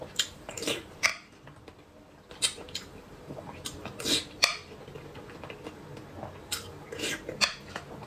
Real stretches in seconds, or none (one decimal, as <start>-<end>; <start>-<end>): 1.1-2.3; 4.5-6.4